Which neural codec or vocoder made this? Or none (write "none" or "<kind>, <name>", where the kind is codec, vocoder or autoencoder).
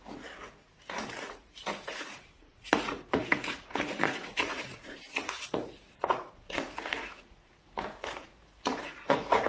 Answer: vocoder, Vocos